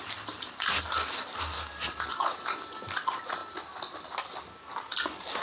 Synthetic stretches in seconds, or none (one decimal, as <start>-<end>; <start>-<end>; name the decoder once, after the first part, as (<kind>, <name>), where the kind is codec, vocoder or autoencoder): none